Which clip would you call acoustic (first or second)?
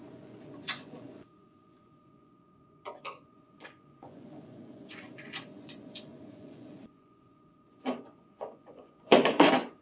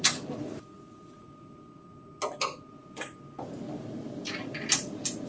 second